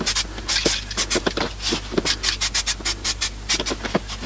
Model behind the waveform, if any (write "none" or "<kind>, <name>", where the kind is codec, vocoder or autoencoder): none